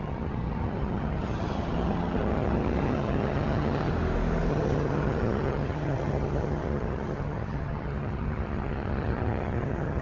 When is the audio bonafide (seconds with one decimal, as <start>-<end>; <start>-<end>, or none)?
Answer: 3.9-4.5

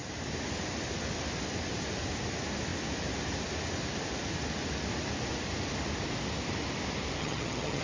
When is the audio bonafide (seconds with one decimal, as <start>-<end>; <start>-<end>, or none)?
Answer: 0.0-7.2

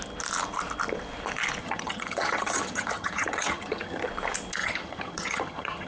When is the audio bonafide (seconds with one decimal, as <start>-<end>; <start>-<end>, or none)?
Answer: 0.0-1.6; 4.1-4.6

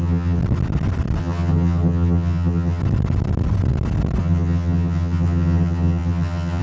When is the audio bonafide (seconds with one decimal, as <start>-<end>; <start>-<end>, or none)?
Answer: 0.4-1.2; 2.8-4.2

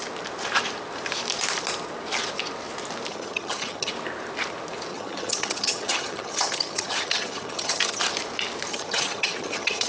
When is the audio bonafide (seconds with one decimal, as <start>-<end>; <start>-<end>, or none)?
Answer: 0.0-3.1; 3.9-4.9; 8.0-8.7

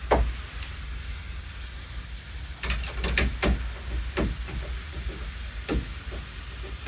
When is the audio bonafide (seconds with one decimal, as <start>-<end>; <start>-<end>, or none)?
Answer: 0.0-6.9

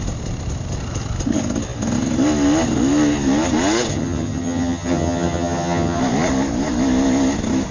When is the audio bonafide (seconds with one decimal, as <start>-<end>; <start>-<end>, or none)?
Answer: 0.0-3.9; 6.0-7.7